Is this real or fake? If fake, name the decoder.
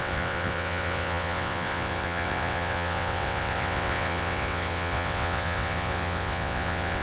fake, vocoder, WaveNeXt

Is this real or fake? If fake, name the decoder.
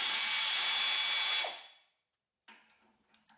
real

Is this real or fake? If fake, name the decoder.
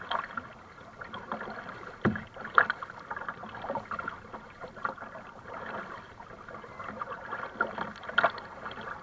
real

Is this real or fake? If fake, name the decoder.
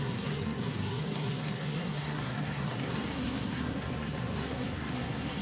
fake, codec, SNAC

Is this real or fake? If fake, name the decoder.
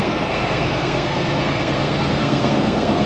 fake, codec, SNAC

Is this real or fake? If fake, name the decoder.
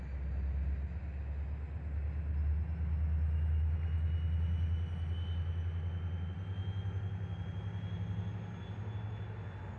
real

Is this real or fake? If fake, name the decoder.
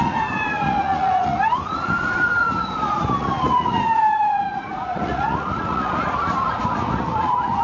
fake, vocoder, Vocos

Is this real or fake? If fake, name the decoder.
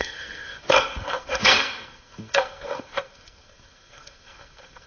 fake, codec, SNAC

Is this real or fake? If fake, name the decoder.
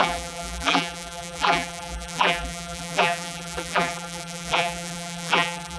fake, vocoder, BigVGAN v2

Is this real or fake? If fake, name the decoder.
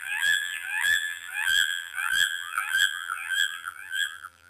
fake, vocoder, BigVGAN v2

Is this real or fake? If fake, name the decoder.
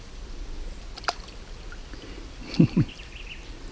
real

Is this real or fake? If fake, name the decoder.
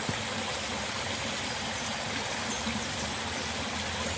real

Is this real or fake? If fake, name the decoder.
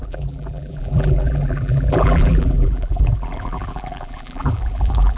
fake, vocoder, BigVGAN v2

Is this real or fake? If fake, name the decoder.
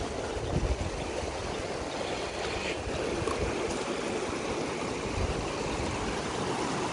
real